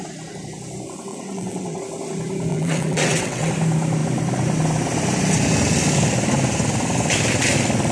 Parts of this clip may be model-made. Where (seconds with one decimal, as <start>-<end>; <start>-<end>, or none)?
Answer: 1.1-1.8; 2.5-3.5